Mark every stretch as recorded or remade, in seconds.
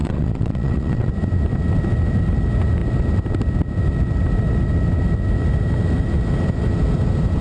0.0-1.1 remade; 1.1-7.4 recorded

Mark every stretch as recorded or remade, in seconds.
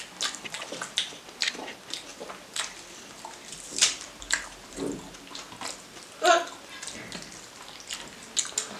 0.0-2.1 recorded; 2.1-5.0 remade; 5.0-8.8 recorded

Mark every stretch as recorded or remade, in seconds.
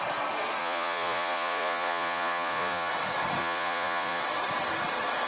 0.0-0.6 recorded; 0.6-2.9 remade; 2.9-3.4 recorded; 3.4-4.2 remade; 4.2-5.3 recorded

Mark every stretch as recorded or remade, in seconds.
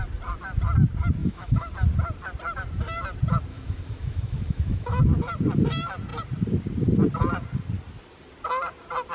0.0-1.2 recorded; 1.2-1.7 remade; 1.7-3.5 recorded; 3.5-5.0 remade; 5.0-9.1 recorded